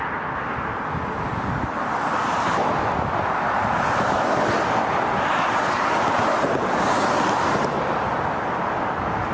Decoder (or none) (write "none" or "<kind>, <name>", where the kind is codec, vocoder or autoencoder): none